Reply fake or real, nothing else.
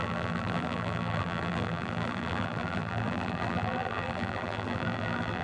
fake